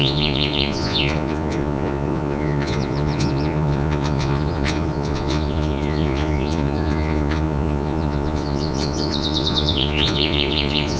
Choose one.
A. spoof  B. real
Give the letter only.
A